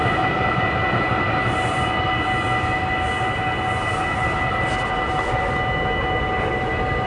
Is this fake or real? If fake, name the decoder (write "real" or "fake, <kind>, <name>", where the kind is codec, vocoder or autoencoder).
real